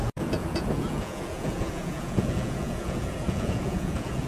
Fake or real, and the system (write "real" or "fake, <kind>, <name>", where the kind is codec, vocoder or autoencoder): fake, vocoder, Vocos